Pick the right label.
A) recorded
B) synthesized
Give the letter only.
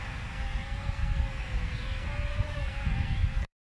B